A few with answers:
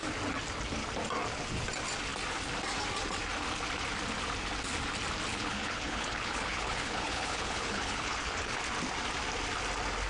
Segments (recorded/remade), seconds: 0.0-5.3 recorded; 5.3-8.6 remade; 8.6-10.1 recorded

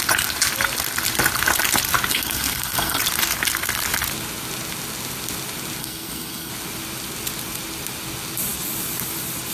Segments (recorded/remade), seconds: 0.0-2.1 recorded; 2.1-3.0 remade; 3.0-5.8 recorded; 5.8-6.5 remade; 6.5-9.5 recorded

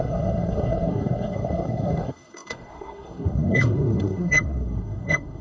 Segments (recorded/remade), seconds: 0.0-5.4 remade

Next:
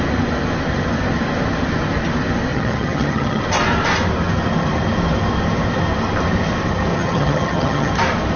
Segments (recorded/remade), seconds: 0.0-2.5 recorded; 2.5-3.4 remade; 3.4-6.9 recorded; 6.9-7.9 remade; 7.9-8.4 recorded

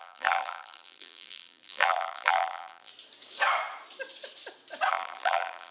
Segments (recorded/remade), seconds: 0.0-2.9 remade; 2.9-4.9 recorded; 4.9-5.7 remade